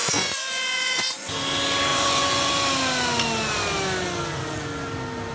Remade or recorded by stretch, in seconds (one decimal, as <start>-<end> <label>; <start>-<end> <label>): 0.0-1.3 remade; 1.3-1.9 recorded; 1.9-2.5 remade; 2.5-5.3 recorded

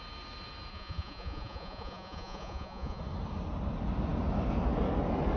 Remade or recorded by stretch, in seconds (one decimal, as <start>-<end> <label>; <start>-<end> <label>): 0.0-0.7 recorded; 0.7-3.0 remade; 3.0-5.4 recorded

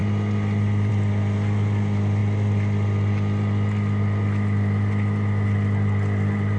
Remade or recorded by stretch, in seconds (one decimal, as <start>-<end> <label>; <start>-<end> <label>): 0.0-6.6 recorded

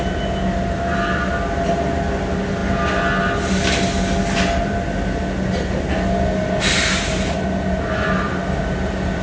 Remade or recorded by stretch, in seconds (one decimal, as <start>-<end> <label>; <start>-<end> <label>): 0.0-9.2 recorded